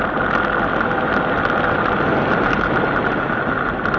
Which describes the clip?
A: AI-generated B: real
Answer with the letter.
B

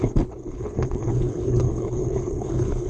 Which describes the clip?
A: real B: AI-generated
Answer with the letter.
B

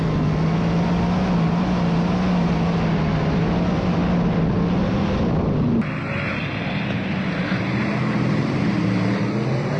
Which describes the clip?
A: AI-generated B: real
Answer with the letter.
B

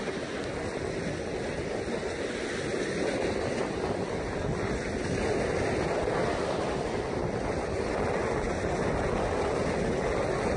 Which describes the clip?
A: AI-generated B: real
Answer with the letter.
B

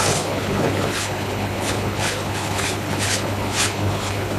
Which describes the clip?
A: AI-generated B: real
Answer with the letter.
A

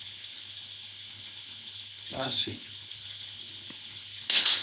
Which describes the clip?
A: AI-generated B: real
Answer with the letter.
A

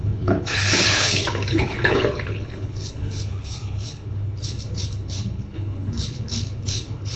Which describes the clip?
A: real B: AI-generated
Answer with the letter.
B